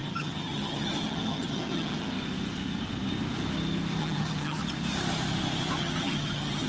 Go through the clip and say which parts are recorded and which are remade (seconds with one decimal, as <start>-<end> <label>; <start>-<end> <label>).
0.0-2.1 remade; 2.1-4.0 recorded; 4.0-4.6 remade; 4.6-5.8 recorded; 5.8-6.7 remade